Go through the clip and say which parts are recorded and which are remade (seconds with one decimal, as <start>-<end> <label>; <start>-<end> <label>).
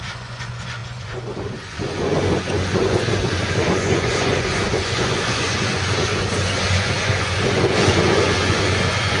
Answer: 0.0-9.2 remade